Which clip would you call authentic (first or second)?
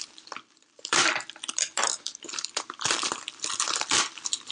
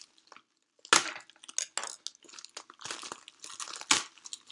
second